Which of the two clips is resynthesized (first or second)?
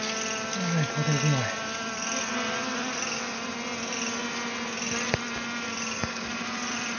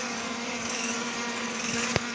second